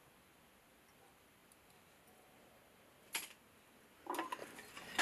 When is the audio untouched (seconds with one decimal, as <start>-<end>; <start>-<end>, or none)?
0.0-5.0